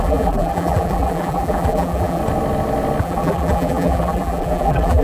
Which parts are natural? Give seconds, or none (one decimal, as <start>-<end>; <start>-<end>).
2.2-3.0